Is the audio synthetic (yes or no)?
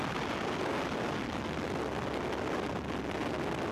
no